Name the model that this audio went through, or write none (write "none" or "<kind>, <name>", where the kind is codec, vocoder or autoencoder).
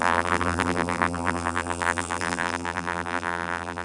vocoder, BigVGAN v2